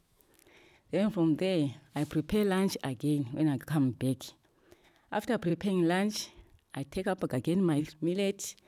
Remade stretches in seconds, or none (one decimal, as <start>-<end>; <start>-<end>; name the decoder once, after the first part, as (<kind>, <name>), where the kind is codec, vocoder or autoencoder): 0.0-0.4 (autoencoder, DAC-VAE); 3.6-5.5; 7.8-8.7